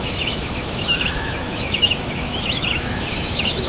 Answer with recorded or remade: remade